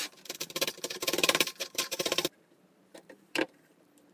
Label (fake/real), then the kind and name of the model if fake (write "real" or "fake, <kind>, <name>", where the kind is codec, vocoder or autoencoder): fake, vocoder, BigVGAN v2